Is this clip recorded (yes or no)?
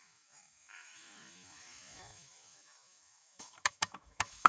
no